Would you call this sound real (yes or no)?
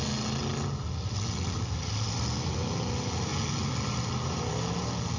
yes